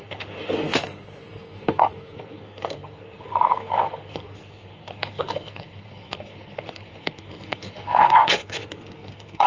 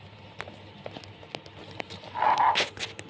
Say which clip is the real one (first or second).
second